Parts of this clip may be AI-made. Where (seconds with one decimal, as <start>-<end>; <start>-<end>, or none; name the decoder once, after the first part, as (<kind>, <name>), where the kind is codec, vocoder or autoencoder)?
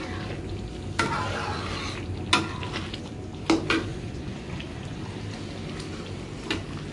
3.9-5.0 (vocoder, Vocos)